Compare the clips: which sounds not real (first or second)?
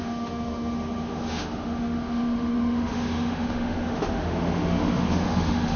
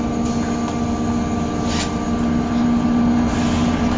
first